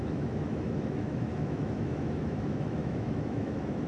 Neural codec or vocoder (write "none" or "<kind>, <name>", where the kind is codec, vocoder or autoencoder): autoencoder, DAC-VAE